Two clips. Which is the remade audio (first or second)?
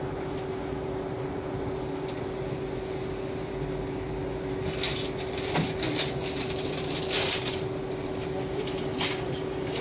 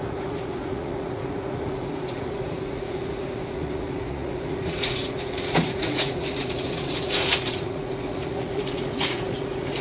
second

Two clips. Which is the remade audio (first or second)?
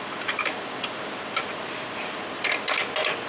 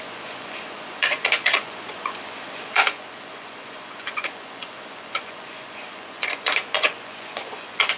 second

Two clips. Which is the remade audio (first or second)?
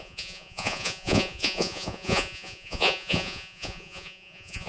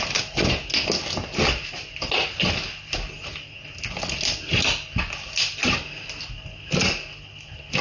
first